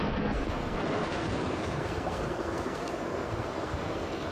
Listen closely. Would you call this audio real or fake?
fake